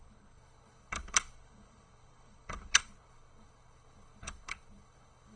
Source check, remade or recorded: remade